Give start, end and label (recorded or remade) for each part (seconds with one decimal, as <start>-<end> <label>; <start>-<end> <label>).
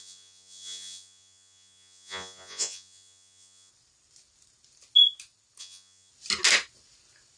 0.0-3.7 remade; 3.7-5.6 recorded; 5.6-6.1 remade; 6.1-7.4 recorded